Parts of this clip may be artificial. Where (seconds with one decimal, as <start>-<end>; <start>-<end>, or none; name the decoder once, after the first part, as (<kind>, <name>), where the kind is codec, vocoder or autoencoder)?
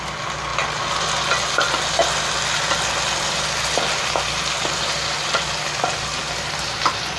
none